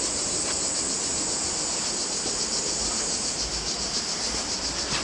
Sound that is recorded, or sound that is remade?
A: recorded